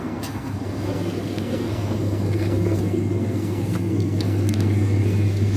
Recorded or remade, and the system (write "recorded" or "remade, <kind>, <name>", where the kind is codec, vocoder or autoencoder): remade, codec, SNAC